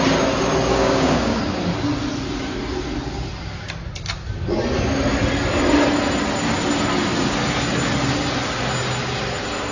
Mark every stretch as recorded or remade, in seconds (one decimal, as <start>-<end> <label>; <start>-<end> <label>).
0.0-0.7 recorded; 0.7-1.4 remade; 1.4-9.7 recorded